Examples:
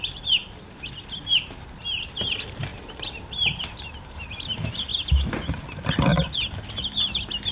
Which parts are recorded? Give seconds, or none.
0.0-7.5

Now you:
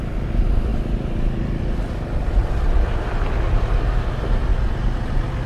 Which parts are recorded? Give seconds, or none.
0.0-5.5

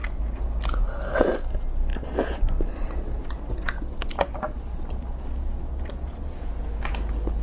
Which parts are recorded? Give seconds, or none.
0.0-7.4

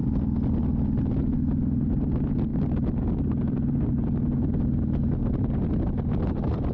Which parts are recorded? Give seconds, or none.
0.0-6.7

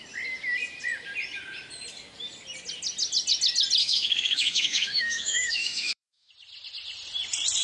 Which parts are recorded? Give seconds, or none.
0.0-3.8; 6.3-7.6